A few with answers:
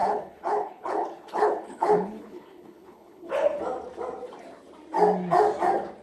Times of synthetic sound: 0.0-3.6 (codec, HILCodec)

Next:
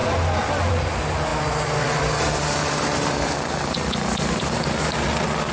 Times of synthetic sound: none

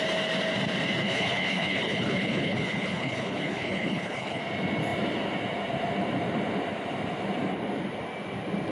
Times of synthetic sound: 1.0-4.4 (codec, HILCodec)

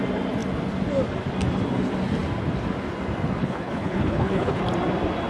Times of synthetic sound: 3.4-4.6 (codec, HILCodec)

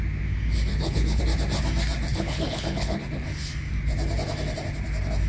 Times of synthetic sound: 0.7-1.2 (codec, HILCodec); 2.1-3.0

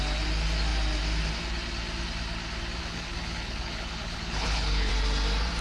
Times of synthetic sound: 2.8-4.9 (codec, HILCodec)

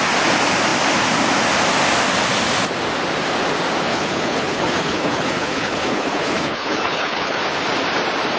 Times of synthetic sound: 3.9-7.4 (codec, HILCodec)